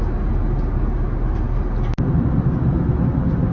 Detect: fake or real real